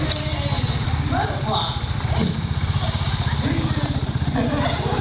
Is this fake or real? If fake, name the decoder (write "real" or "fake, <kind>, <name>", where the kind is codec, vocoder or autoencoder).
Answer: real